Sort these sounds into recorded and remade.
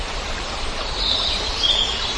remade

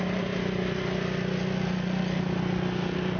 recorded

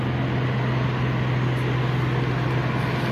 recorded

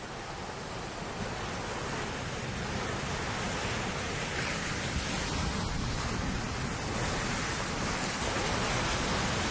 recorded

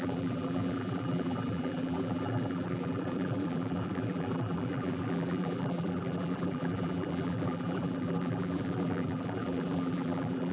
remade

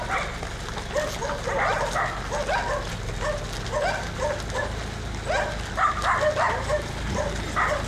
recorded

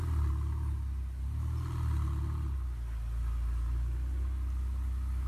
recorded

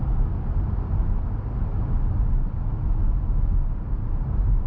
recorded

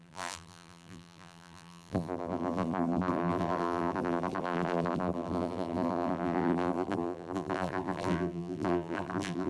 remade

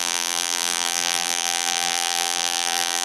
remade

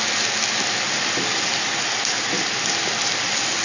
recorded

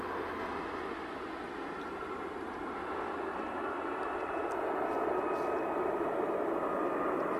recorded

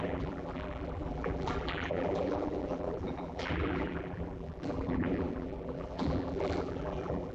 remade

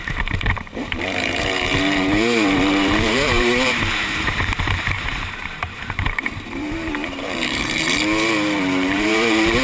remade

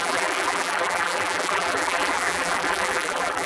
remade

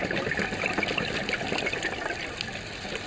recorded